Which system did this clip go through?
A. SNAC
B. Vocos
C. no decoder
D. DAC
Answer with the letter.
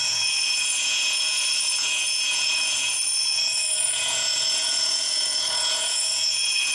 B